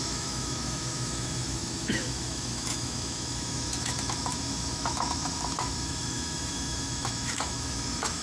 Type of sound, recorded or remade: remade